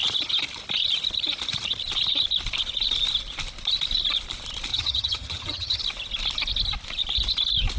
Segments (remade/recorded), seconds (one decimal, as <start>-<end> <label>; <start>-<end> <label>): 0.0-4.7 recorded; 4.7-5.8 remade; 5.8-7.8 recorded